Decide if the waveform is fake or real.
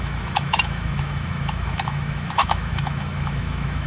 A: fake